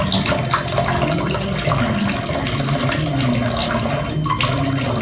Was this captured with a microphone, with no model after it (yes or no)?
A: yes